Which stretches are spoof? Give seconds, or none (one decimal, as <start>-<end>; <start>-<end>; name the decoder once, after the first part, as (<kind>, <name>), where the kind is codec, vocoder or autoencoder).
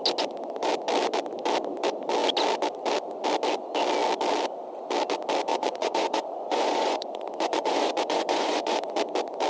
5.5-8.8 (vocoder, Vocos)